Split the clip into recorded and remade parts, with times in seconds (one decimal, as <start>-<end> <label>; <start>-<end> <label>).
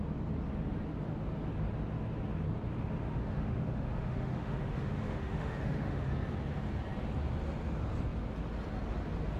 0.0-3.1 recorded; 3.1-6.1 remade; 6.1-9.4 recorded